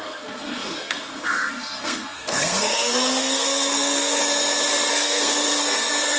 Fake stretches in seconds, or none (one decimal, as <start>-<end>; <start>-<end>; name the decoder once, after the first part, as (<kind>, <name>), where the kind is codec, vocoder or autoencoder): 0.0-4.2 (codec, SNAC); 4.9-6.2